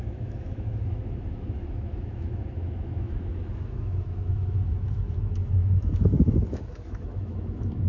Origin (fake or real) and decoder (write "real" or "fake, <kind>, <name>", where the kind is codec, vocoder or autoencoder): fake, autoencoder, DAC-VAE